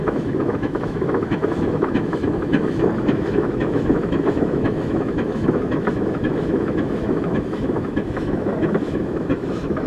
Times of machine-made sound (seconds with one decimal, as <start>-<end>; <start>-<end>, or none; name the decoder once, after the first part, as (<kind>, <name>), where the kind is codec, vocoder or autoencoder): 0.0-9.9 (autoencoder, DAC-VAE)